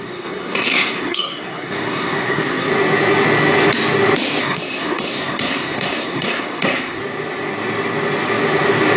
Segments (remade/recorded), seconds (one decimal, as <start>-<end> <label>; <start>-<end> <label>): 0.0-2.7 remade; 2.7-4.4 recorded; 4.4-7.0 remade; 7.0-9.0 recorded